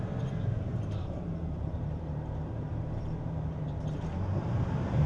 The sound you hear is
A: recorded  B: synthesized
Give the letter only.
B